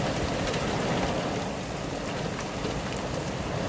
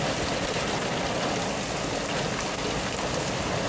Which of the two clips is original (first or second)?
second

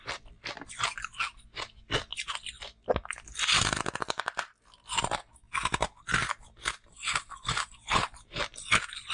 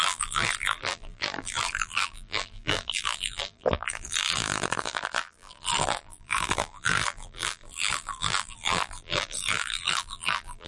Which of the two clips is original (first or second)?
first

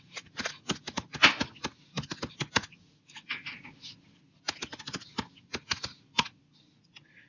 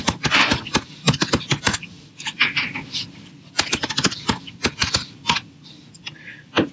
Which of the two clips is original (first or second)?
first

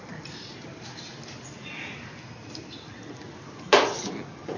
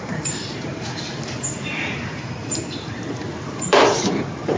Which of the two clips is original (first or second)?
first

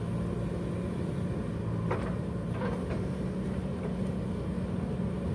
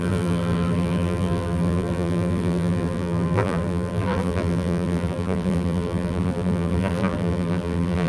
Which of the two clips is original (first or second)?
first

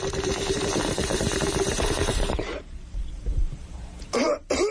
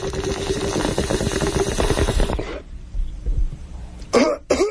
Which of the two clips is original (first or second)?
second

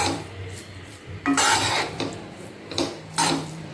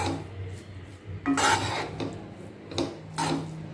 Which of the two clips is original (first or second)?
second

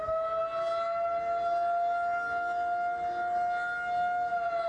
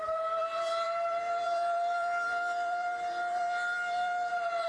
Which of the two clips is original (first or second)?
first